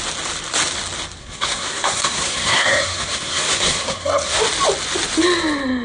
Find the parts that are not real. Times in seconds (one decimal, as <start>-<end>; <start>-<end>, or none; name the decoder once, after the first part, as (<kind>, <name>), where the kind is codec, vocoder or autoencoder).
1.2-4.4 (codec, SNAC)